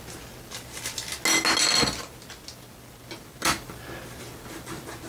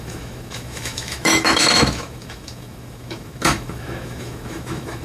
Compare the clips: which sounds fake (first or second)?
second